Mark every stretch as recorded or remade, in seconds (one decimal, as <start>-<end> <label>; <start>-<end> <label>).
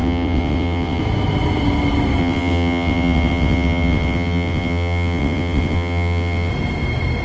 0.0-1.0 remade; 1.0-2.2 recorded; 2.2-6.5 remade; 6.5-7.2 recorded